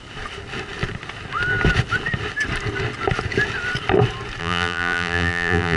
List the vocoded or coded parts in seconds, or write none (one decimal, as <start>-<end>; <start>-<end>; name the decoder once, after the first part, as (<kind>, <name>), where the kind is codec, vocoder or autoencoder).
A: 4.4-5.8 (vocoder, BigVGAN v2)